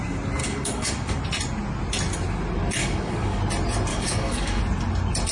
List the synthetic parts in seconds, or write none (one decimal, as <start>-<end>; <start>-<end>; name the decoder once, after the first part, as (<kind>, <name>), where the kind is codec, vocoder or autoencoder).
0.4-1.2 (codec, DAC); 2.8-3.4; 3.9-4.6